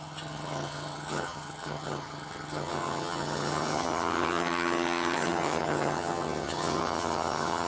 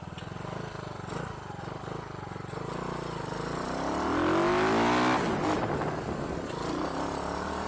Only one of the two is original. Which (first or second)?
second